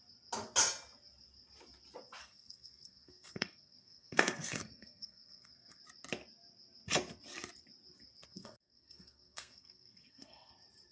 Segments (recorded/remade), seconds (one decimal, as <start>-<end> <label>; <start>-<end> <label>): 0.0-2.2 recorded; 2.2-5.8 remade; 5.8-8.3 recorded; 8.3-10.5 remade; 10.5-10.9 recorded